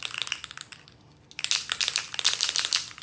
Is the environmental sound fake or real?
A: real